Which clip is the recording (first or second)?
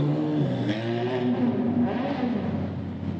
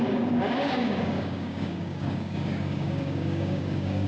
first